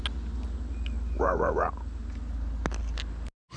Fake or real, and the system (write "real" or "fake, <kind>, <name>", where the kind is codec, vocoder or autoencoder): real